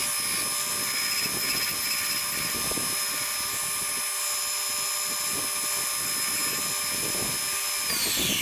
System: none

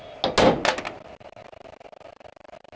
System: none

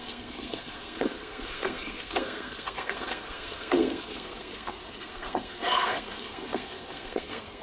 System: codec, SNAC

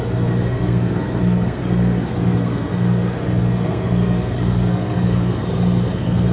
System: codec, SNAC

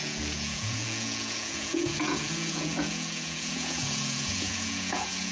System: vocoder, Vocos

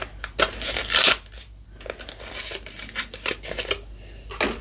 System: none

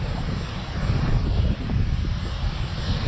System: none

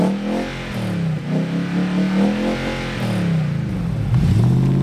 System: none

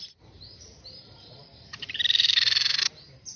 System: vocoder, BigVGAN v2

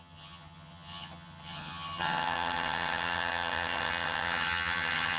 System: vocoder, HiFi-GAN